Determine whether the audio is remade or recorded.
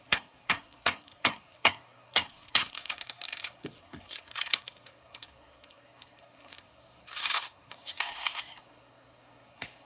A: remade